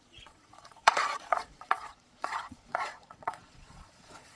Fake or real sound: fake